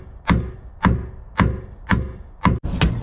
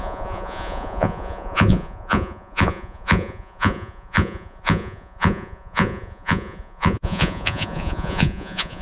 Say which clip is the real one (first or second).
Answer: first